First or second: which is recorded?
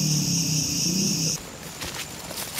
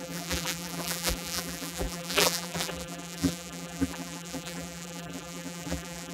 first